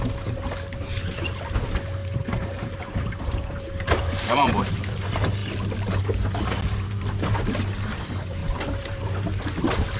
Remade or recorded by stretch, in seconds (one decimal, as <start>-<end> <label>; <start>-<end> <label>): 0.0-2.0 recorded; 2.0-4.7 remade; 4.7-8.4 recorded; 8.4-9.0 remade; 9.0-10.0 recorded